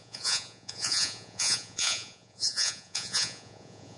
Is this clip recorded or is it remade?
remade